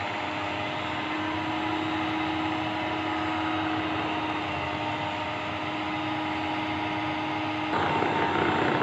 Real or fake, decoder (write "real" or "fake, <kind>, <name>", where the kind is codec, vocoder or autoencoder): real